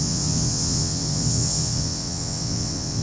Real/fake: fake